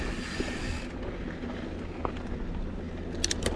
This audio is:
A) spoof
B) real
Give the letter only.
B